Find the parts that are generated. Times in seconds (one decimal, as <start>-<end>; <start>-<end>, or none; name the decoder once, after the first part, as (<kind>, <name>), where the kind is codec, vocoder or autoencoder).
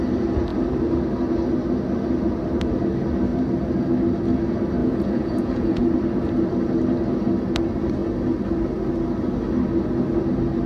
4.8-5.9 (vocoder, Vocos)